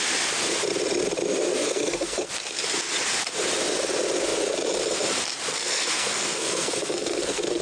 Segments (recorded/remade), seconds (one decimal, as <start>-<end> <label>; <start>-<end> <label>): 0.0-1.5 recorded; 1.5-2.3 remade; 2.3-5.5 recorded; 5.5-7.6 remade